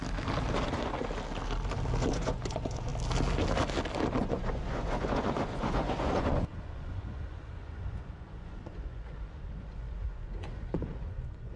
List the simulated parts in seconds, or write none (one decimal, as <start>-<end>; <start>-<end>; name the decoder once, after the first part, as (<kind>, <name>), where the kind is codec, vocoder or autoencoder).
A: 2.1-2.9 (vocoder, Vocos); 4.2-11.6